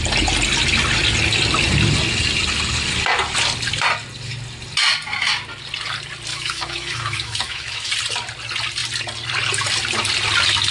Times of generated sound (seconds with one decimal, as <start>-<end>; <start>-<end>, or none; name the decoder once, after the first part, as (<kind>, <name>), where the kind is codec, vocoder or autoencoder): 6.3-7.9 (autoencoder, DAC-VAE)